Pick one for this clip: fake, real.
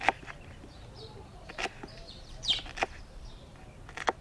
real